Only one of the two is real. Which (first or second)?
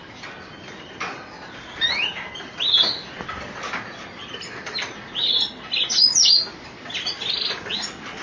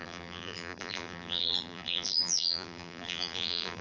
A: first